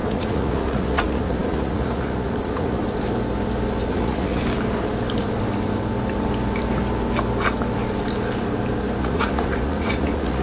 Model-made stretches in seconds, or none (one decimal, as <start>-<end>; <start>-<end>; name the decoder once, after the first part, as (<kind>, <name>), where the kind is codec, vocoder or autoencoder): 0.0-2.8 (vocoder, Vocos); 3.9-4.4; 9.0-10.4

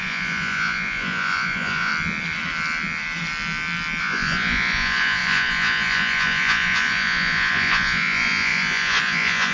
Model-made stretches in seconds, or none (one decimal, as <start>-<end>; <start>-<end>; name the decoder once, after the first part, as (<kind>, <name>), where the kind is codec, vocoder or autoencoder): 0.0-1.9 (vocoder, Vocos); 4.0-9.5

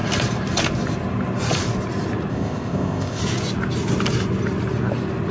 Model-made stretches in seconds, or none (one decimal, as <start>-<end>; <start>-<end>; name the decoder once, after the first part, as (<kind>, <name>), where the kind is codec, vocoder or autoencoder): 2.3-3.2 (codec, ZipCodec)

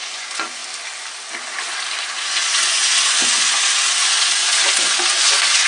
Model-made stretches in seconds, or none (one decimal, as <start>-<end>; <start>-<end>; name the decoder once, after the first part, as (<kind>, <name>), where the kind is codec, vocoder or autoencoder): 0.0-0.6 (vocoder, Vocos); 2.0-5.7

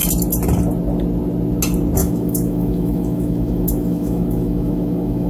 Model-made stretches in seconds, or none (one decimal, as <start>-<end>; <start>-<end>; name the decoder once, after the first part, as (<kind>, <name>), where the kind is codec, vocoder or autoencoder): 2.0-5.3 (autoencoder, DAC-VAE)

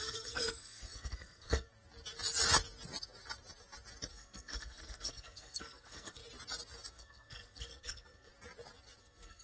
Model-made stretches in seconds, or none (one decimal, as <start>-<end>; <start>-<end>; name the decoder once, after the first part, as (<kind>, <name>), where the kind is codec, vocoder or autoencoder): 0.0-1.7 (codec, SNAC); 4.1-6.2; 6.9-8.3; 9.0-9.4